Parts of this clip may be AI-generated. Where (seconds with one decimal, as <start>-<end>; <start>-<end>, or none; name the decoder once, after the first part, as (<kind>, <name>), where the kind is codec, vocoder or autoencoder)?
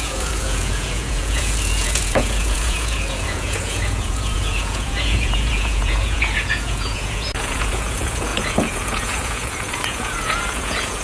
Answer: 0.0-11.0 (vocoder, Vocos)